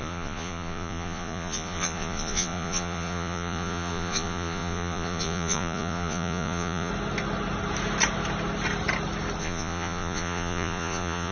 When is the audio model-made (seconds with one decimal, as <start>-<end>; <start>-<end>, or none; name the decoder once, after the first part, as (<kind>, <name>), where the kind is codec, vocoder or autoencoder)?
0.0-6.9 (vocoder, Vocos); 9.4-11.3